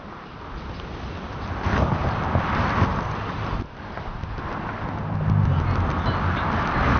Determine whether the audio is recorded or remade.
recorded